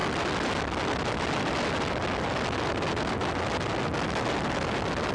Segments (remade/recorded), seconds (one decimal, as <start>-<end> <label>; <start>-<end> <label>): 0.0-5.1 recorded